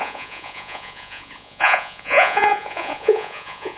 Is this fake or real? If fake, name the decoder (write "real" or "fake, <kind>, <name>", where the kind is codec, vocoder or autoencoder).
fake, vocoder, Vocos